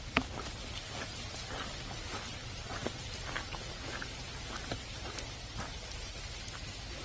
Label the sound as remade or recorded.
recorded